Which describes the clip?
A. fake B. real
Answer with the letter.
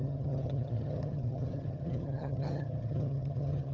A